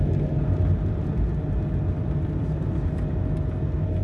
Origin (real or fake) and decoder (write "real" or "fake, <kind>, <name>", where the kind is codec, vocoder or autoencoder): real